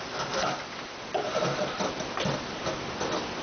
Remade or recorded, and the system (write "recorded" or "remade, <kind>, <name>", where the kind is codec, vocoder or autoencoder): recorded